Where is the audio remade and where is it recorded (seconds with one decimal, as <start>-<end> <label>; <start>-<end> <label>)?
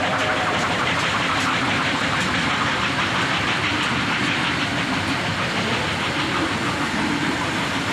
0.0-1.1 remade; 1.1-1.6 recorded; 1.6-4.7 remade; 4.7-7.1 recorded; 7.1-7.9 remade